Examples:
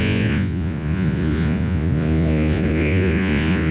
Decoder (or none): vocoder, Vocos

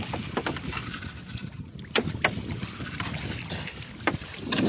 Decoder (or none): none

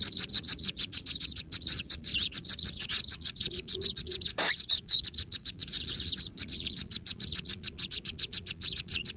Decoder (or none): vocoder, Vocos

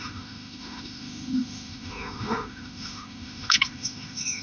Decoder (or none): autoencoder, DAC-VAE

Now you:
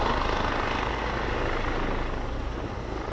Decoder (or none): none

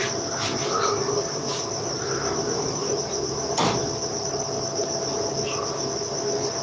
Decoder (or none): none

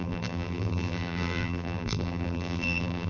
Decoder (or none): vocoder, BigVGAN v2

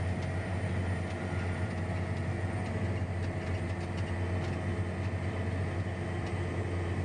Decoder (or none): none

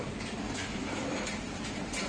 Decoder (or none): vocoder, BigVGAN v2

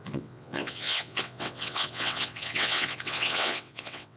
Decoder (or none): vocoder, WaveNeXt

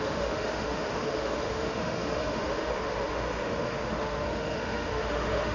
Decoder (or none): autoencoder, DAC-VAE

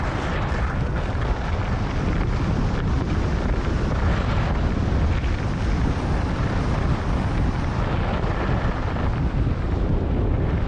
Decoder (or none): none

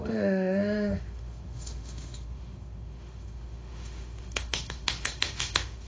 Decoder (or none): autoencoder, DAC-VAE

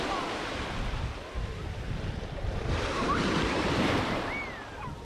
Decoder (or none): none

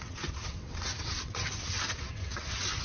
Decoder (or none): vocoder, WaveNeXt